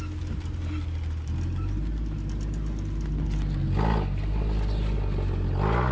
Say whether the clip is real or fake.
real